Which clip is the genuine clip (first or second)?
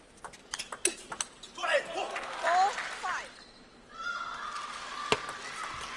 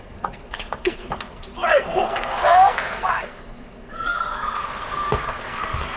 first